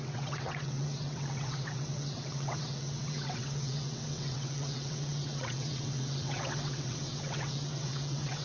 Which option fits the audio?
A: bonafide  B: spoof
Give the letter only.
B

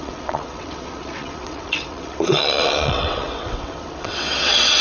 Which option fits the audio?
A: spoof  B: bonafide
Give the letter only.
A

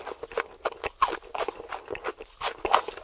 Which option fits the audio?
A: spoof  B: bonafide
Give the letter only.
B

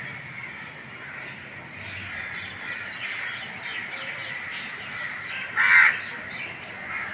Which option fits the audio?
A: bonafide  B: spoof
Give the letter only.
A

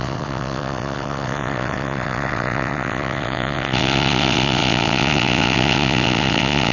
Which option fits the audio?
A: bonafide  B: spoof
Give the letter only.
B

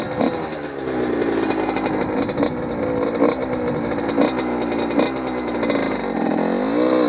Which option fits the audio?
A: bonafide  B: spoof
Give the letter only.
A